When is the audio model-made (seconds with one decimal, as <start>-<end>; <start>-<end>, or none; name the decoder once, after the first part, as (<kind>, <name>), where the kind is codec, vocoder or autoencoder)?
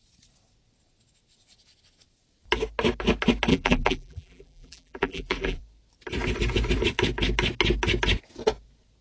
3.5-5.6 (vocoder, BigVGAN v2)